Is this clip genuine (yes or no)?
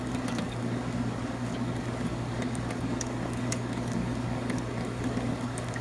no